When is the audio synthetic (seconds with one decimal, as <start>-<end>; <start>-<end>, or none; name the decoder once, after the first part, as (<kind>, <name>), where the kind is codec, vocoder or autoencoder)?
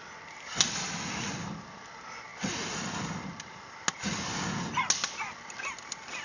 none